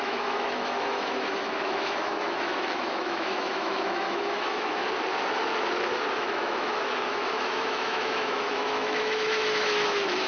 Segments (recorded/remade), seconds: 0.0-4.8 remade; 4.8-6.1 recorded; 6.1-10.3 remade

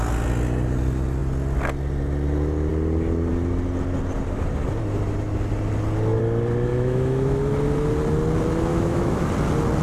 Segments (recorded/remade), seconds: 0.0-6.7 recorded; 6.7-7.4 remade; 7.4-8.7 recorded; 8.7-9.3 remade; 9.3-9.8 recorded

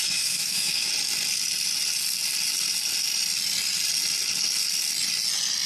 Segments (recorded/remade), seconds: 0.0-0.9 remade; 0.9-5.7 recorded